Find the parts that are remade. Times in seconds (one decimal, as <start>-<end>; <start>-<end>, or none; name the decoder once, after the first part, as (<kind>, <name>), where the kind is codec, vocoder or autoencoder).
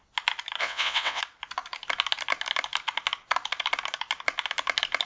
0.6-1.2 (vocoder, WaveNeXt)